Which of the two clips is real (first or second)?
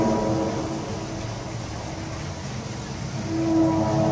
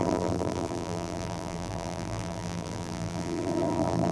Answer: first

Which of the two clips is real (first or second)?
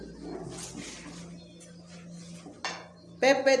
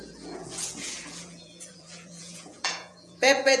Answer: first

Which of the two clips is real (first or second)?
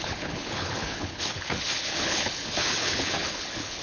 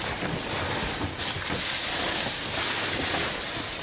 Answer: second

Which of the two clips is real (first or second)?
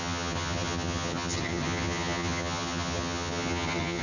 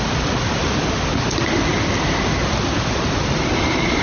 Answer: second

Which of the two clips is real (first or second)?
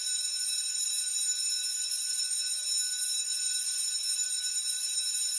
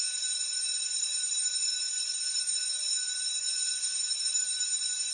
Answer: first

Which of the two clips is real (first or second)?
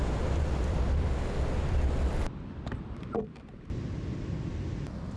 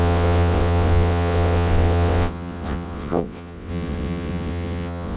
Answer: first